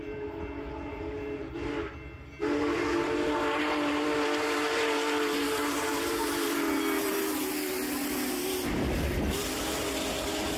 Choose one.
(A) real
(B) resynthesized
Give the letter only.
A